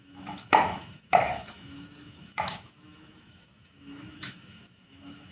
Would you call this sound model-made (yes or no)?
yes